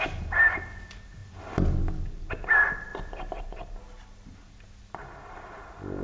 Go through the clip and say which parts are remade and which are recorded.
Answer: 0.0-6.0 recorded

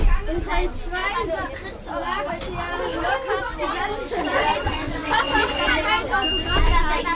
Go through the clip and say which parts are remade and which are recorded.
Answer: 0.0-4.3 recorded; 4.3-5.6 remade; 5.6-7.1 recorded

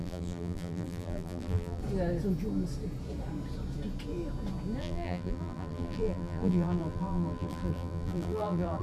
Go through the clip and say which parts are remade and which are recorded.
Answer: 0.0-1.8 remade; 1.8-4.8 recorded; 4.8-8.8 remade

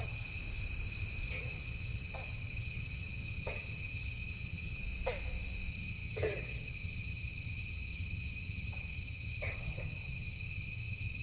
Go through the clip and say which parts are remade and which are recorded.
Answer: 0.0-0.4 remade; 0.4-1.3 recorded; 1.3-4.8 remade; 4.8-5.7 recorded; 5.7-11.2 remade